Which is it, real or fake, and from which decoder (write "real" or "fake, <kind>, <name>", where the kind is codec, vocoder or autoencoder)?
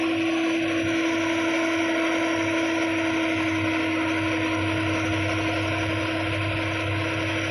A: real